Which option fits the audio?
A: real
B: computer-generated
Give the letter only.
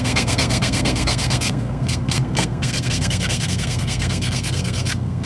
B